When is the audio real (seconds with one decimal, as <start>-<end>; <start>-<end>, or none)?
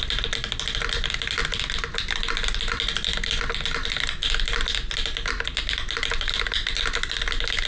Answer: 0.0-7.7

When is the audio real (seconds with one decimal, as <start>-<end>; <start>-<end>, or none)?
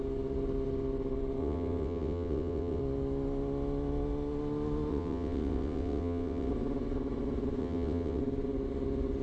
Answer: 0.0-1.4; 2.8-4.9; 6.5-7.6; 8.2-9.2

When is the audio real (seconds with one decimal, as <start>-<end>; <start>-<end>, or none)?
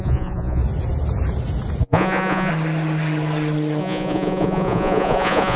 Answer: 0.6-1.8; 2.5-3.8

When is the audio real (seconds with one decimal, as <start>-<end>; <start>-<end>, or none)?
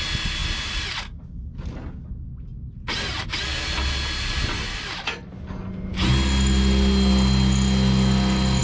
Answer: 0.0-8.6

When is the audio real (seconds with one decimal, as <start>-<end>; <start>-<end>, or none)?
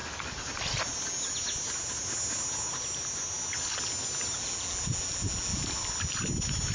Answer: 0.0-6.7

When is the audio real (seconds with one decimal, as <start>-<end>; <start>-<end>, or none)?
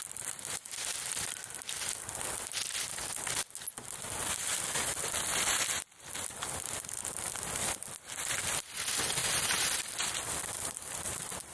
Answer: 0.0-11.5